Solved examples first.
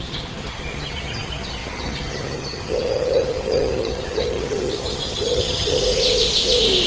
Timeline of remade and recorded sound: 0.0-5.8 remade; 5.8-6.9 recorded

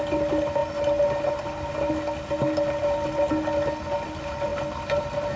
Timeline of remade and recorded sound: 0.0-5.4 recorded

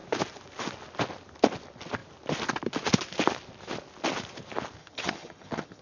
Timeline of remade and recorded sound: 0.0-4.8 recorded; 4.8-5.8 remade

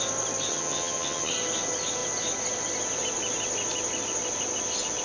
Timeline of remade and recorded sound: 0.0-0.5 recorded; 0.5-1.3 remade; 1.3-5.0 recorded

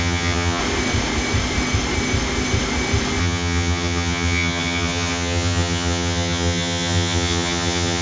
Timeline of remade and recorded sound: 0.0-0.6 remade; 0.6-3.2 recorded; 3.2-8.0 remade